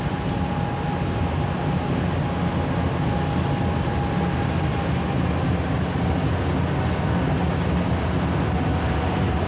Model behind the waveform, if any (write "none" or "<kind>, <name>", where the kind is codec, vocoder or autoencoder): none